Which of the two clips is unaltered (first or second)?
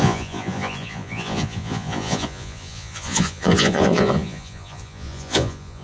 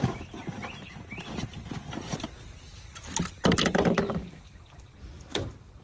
second